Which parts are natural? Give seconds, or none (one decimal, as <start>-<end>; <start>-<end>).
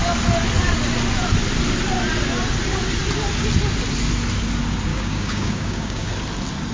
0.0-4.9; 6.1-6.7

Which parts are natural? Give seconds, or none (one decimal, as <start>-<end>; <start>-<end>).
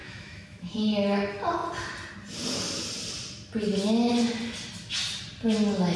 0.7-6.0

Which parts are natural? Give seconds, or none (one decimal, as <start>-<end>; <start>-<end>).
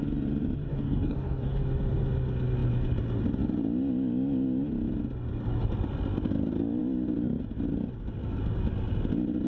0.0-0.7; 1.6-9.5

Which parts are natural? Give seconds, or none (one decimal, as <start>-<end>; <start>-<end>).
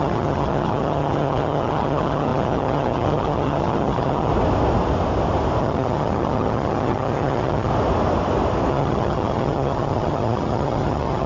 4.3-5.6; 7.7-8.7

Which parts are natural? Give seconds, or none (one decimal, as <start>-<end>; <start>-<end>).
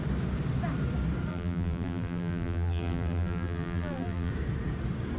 0.0-1.3; 4.3-5.2